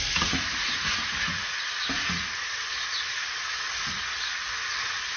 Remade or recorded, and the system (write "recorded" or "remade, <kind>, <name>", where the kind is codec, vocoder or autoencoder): remade, vocoder, Vocos